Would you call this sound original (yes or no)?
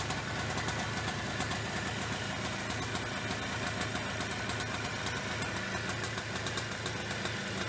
yes